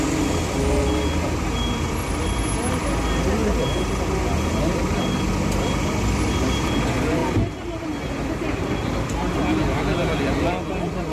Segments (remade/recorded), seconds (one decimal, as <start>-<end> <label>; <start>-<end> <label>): 0.0-11.1 recorded